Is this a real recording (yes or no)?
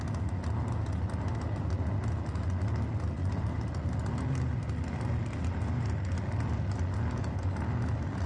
yes